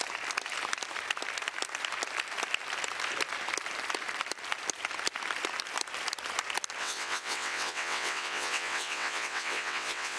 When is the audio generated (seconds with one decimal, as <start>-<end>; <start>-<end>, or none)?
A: 6.8-10.2